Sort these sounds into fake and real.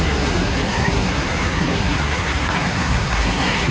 fake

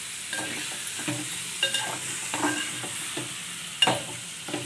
real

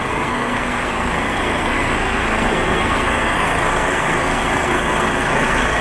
fake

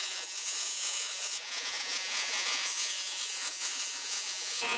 fake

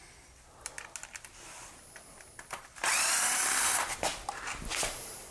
real